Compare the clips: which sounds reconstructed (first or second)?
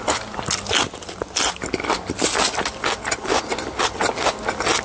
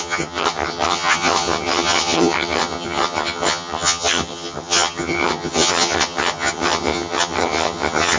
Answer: second